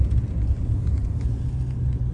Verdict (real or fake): real